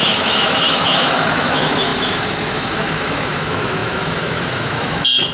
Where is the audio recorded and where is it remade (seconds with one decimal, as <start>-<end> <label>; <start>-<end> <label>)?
0.0-5.3 remade